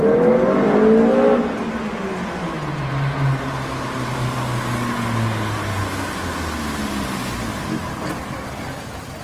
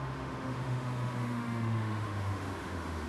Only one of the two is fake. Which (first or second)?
second